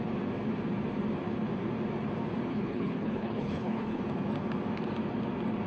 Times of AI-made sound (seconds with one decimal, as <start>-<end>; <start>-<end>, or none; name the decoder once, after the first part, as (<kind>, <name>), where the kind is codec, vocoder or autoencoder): 2.5-4.0 (codec, HILCodec)